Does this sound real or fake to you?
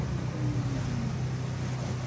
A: real